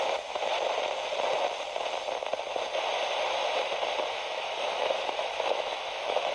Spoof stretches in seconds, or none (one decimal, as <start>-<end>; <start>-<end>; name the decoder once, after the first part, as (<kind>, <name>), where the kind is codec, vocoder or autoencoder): 0.0-0.5 (autoencoder, DAC-VAE); 4.1-6.3